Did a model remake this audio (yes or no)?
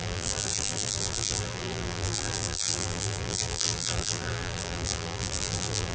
yes